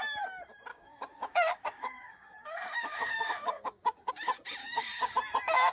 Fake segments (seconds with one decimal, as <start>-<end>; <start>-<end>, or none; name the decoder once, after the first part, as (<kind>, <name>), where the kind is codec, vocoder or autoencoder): 0.7-4.1 (codec, DAC); 4.6-5.1